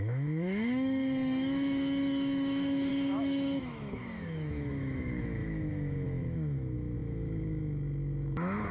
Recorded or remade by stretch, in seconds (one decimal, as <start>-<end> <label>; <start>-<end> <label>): 0.0-8.7 remade